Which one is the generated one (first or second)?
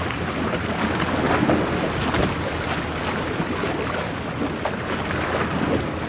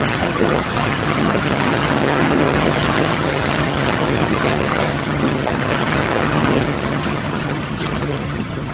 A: second